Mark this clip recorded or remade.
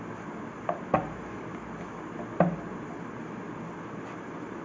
recorded